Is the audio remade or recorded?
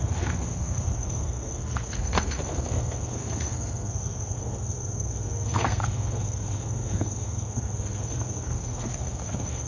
remade